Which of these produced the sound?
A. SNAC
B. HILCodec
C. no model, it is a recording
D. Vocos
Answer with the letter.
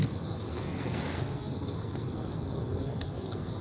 A